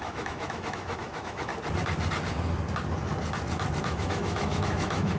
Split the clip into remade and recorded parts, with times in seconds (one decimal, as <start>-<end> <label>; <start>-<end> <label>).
0.0-1.5 remade; 1.5-3.8 recorded; 3.8-5.2 remade